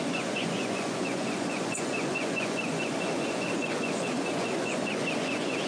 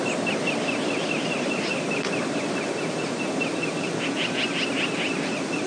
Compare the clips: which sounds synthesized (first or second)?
first